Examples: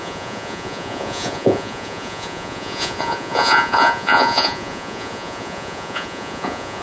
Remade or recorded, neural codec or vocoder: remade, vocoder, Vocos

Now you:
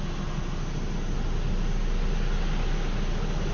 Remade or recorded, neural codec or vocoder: recorded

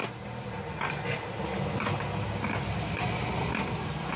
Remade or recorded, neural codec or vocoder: recorded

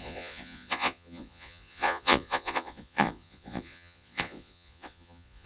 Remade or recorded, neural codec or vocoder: remade, vocoder, Vocos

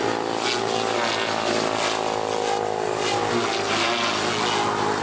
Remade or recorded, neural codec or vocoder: recorded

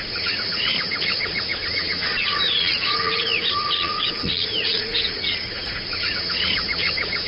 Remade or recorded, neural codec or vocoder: remade, vocoder, Vocos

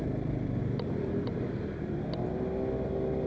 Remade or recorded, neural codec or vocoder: recorded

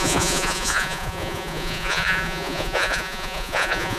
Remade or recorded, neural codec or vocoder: remade, vocoder, Vocos